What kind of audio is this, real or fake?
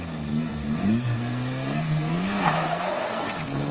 fake